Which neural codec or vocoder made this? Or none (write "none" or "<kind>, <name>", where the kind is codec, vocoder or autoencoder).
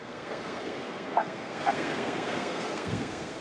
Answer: codec, SNAC